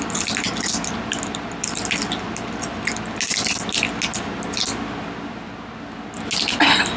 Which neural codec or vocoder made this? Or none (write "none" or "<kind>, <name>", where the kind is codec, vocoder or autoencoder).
none